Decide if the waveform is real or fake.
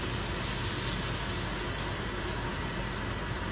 real